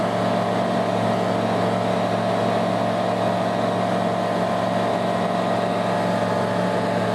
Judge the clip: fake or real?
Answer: real